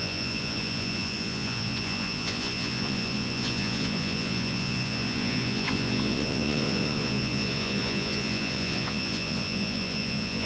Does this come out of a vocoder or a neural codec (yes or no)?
yes